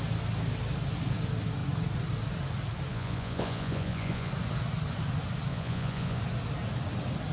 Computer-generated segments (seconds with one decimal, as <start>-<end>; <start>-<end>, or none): 2.9-4.3; 5.5-6.2